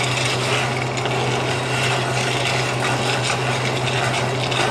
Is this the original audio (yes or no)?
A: yes